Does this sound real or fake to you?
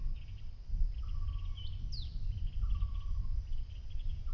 real